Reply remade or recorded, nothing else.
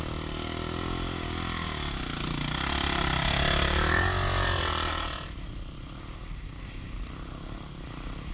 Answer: recorded